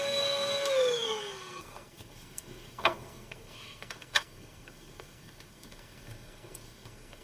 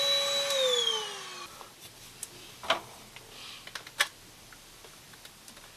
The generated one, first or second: first